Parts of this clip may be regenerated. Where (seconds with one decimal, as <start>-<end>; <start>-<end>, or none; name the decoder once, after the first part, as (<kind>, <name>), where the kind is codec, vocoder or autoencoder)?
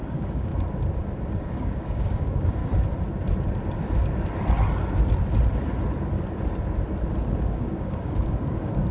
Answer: 0.0-0.5 (codec, DAC); 1.3-2.6; 7.2-8.9